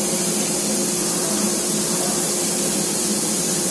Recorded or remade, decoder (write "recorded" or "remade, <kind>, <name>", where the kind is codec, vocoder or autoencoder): recorded